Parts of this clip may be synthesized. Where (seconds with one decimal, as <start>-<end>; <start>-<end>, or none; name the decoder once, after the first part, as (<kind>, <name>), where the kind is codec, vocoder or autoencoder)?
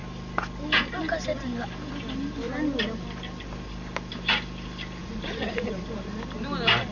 5.0-5.7 (vocoder, Vocos)